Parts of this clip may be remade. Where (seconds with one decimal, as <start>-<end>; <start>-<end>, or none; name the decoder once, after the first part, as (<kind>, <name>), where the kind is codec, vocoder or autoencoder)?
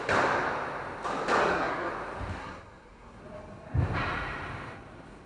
1.4-1.9 (codec, SNAC); 2.4-3.2